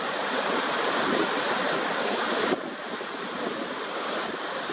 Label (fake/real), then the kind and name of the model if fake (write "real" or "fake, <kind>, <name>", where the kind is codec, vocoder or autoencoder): real